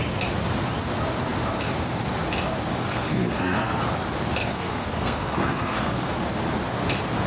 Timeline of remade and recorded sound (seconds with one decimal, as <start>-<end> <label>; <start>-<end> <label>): 0.0-2.8 recorded; 2.8-3.8 remade; 3.8-4.4 recorded; 4.4-6.1 remade; 6.1-7.3 recorded